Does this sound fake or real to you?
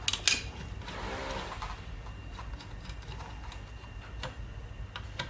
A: real